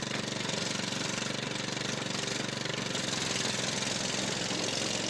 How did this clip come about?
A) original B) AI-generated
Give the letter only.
A